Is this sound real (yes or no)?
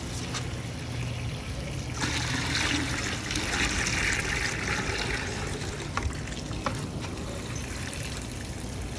yes